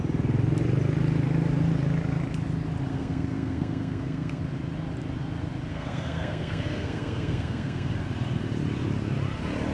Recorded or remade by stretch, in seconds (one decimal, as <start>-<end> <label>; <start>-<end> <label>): 0.0-2.9 recorded; 2.9-4.4 remade; 4.4-5.7 recorded; 5.7-7.9 remade; 7.9-9.7 recorded